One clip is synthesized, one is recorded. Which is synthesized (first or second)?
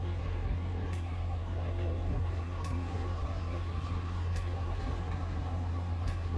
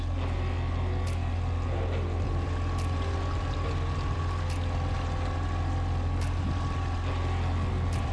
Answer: first